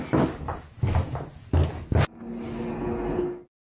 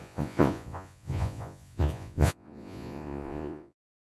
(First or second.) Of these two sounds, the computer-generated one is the second